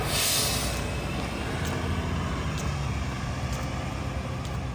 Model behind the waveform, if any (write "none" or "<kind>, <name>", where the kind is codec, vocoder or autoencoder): none